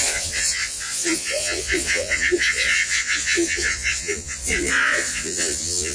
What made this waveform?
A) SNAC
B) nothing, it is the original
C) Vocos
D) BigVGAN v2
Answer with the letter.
C